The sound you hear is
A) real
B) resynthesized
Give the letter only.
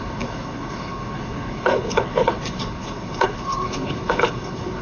B